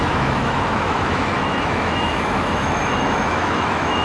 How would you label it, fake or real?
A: fake